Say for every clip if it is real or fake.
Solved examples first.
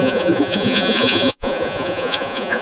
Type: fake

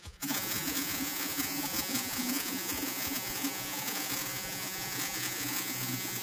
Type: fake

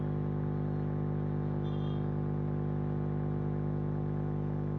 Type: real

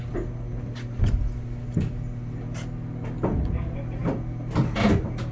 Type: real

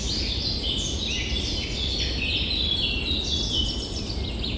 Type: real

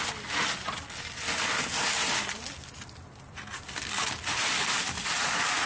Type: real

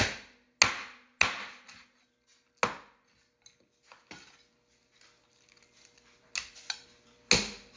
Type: real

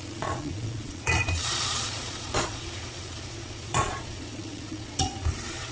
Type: fake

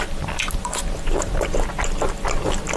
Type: real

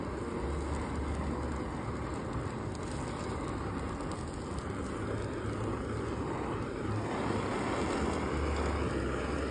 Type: real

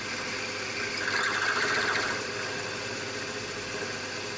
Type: real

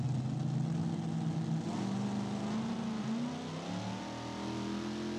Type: real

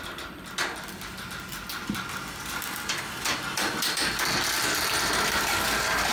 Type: real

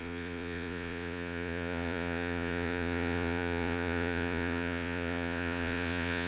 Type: fake